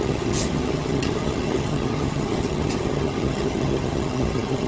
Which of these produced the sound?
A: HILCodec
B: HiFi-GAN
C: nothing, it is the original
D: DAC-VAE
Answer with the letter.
B